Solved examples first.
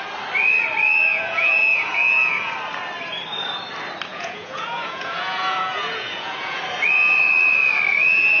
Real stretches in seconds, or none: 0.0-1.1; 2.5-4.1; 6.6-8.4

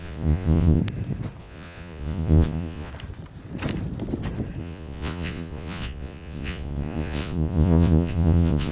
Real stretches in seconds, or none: 0.8-1.4; 2.9-4.6

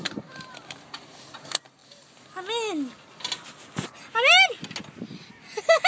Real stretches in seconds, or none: 0.0-5.9